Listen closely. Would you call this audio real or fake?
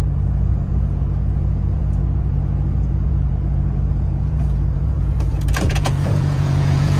fake